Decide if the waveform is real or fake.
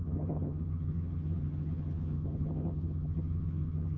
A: fake